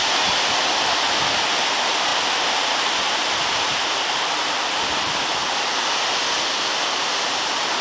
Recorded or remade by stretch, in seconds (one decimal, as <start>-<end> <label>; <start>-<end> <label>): 0.0-7.8 recorded